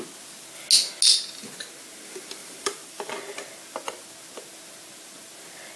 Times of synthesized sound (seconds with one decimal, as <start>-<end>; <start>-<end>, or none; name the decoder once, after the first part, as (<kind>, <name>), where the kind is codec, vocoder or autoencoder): 2.4-3.1 (vocoder, BigVGAN v2)